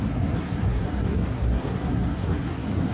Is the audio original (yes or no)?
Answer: no